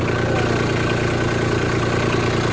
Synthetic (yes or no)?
no